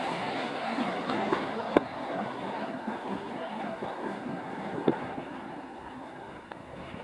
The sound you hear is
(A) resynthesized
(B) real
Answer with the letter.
A